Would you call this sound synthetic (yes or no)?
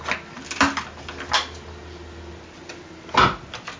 no